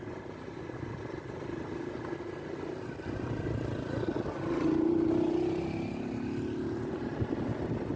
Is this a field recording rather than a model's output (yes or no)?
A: yes